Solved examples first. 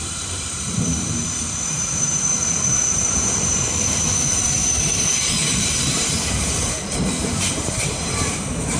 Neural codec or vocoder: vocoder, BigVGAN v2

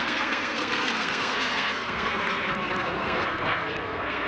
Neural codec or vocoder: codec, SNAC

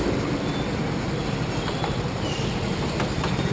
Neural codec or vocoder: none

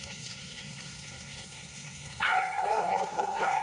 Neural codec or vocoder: codec, SNAC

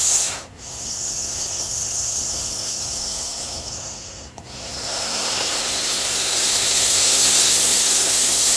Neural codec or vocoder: codec, SNAC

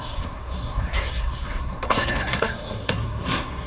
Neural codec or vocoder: codec, SNAC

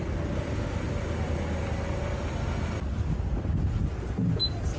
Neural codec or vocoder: none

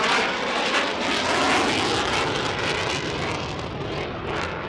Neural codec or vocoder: none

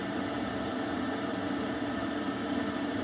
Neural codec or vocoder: vocoder, BigVGAN v2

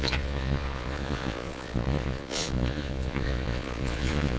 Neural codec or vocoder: vocoder, Vocos